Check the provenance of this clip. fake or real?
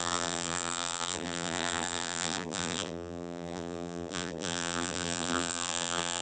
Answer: fake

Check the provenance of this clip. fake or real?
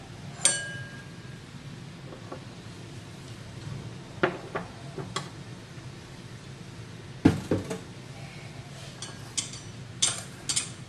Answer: real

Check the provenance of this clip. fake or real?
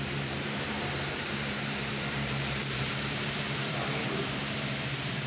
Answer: fake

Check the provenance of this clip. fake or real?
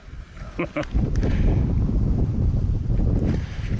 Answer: fake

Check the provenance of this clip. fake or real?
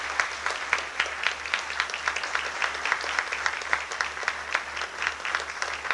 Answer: real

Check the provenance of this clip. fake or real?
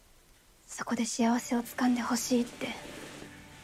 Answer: real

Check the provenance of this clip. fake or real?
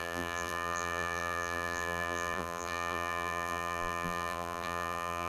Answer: fake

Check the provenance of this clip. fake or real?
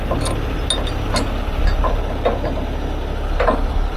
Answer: real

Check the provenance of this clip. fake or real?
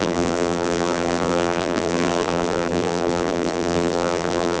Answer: fake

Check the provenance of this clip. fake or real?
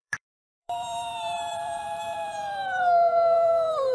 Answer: fake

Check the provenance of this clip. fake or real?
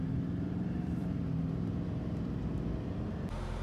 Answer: fake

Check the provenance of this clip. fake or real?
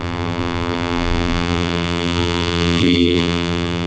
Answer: fake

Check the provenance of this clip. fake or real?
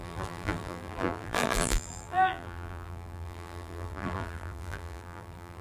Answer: fake